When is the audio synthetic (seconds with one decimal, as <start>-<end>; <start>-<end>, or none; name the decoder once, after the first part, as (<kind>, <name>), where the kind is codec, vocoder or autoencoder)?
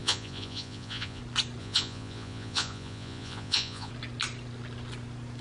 0.0-1.2 (vocoder, Vocos); 1.6-3.9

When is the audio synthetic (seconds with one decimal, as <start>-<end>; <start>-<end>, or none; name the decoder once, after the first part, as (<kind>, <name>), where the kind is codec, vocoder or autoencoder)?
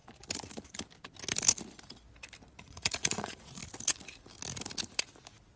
2.6-3.6 (vocoder, Vocos)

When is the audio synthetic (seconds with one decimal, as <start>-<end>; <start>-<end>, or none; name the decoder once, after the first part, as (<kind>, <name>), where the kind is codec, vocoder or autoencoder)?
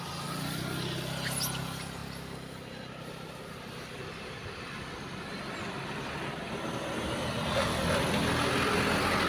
none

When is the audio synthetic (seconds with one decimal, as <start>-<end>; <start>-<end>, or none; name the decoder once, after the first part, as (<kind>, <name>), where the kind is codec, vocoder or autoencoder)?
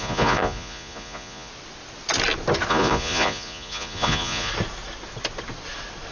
0.0-1.5 (vocoder, Vocos); 2.7-4.5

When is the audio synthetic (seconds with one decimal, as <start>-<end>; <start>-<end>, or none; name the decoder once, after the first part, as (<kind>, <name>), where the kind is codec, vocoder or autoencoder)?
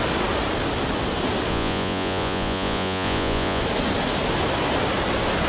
1.5-3.6 (vocoder, Vocos)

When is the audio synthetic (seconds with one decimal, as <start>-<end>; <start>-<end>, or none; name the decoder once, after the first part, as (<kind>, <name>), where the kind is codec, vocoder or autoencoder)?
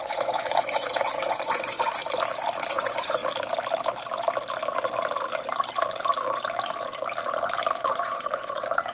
0.0-2.0 (vocoder, Vocos); 2.7-3.2; 7.7-8.9